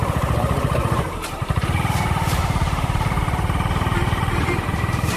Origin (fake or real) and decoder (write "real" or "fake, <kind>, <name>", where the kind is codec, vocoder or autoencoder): fake, vocoder, BigVGAN v2